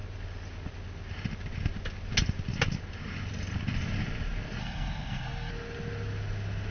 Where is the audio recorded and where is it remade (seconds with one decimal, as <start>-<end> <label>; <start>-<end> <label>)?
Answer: 0.0-4.6 recorded; 4.6-5.5 remade; 5.5-6.7 recorded

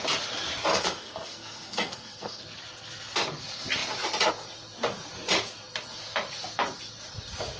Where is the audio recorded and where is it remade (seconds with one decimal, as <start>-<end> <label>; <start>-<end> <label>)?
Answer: 0.0-0.7 recorded; 0.7-2.4 remade; 2.4-7.6 recorded

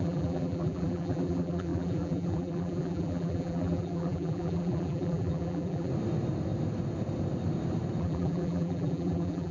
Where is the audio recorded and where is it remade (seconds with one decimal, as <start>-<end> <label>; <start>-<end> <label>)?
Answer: 0.0-5.9 remade; 5.9-8.0 recorded; 8.0-9.5 remade

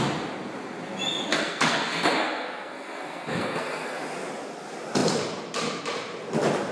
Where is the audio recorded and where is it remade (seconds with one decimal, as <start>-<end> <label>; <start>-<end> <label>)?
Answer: 0.0-1.3 recorded; 1.3-4.0 remade; 4.0-6.7 recorded

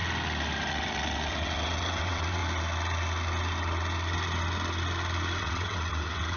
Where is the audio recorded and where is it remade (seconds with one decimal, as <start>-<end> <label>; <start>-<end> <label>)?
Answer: 0.0-0.7 recorded; 0.7-2.4 remade; 2.4-5.4 recorded; 5.4-6.4 remade

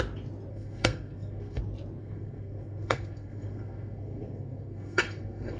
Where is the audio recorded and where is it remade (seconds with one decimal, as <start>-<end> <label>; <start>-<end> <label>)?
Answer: 0.0-0.5 recorded; 0.5-1.6 remade; 1.6-2.0 recorded; 2.0-5.6 remade

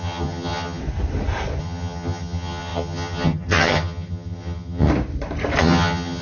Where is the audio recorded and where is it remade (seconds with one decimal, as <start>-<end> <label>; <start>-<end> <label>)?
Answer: 0.0-0.8 remade; 0.8-1.6 recorded; 1.6-4.9 remade; 4.9-5.6 recorded; 5.6-6.2 remade